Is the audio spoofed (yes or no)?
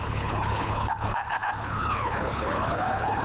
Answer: yes